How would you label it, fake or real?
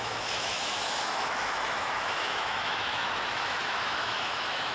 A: fake